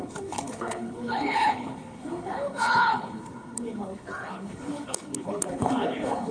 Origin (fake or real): fake